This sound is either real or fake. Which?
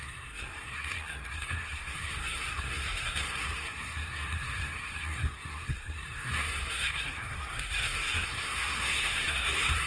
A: fake